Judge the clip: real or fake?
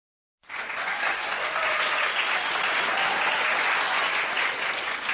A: fake